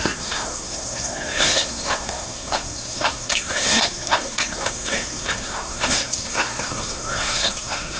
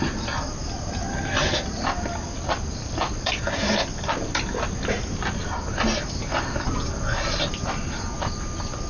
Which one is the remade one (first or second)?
first